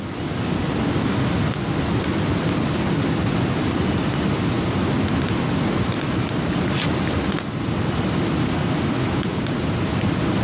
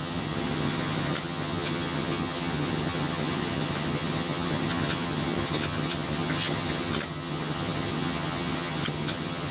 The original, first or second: first